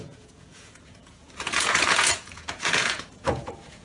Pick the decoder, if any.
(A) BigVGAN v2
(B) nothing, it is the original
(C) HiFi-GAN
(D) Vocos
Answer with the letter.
D